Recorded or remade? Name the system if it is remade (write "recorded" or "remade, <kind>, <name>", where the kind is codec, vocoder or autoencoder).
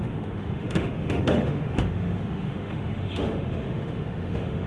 remade, autoencoder, DAC-VAE